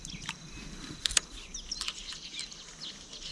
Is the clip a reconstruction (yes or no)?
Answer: no